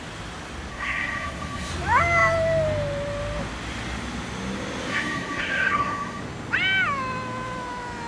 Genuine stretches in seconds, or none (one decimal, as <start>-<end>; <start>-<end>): 0.0-0.7; 1.7-4.9; 6.2-8.1